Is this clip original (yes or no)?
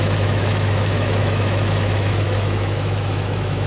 no